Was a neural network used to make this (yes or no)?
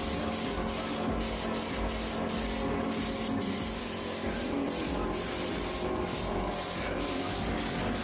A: no